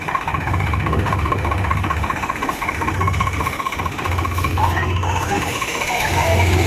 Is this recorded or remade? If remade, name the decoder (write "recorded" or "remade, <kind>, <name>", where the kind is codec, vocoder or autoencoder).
remade, autoencoder, DAC-VAE